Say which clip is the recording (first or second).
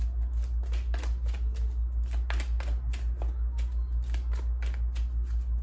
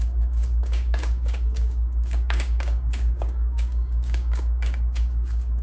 first